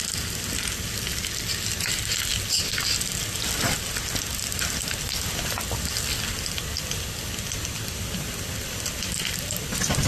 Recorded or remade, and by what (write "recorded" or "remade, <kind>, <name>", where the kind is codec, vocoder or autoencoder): recorded